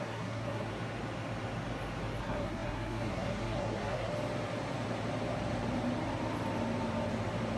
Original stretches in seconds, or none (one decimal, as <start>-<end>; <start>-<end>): 0.7-2.2; 4.1-7.6